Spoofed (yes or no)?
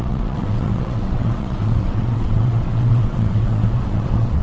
yes